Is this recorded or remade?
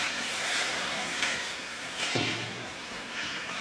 remade